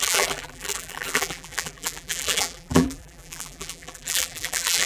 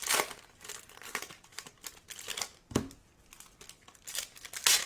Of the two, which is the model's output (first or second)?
first